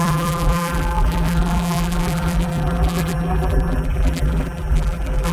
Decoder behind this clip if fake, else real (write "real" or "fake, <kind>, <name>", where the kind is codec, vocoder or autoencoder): fake, vocoder, BigVGAN v2